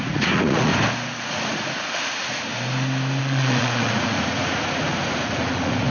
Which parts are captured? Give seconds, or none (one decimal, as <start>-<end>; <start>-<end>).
0.7-1.3; 2.5-3.2